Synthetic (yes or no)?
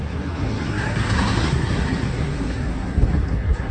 yes